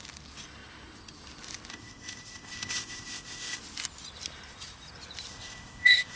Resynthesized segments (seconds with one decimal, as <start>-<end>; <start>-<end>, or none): 1.7-3.6; 5.3-6.2